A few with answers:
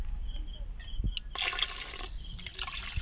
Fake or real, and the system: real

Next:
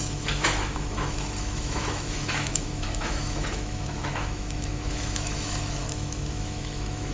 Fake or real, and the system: fake, autoencoder, DAC-VAE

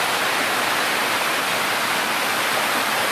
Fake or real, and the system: real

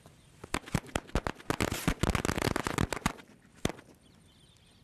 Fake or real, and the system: real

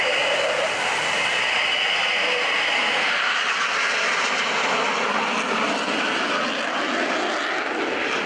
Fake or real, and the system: real